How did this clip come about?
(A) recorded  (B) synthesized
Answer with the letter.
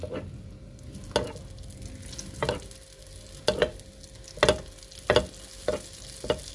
A